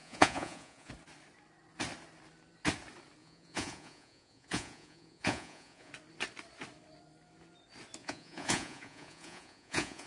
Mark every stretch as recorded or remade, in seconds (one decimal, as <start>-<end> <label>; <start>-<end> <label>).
0.0-0.9 remade; 0.9-3.2 recorded; 3.2-5.9 remade; 5.9-8.0 recorded; 8.0-10.1 remade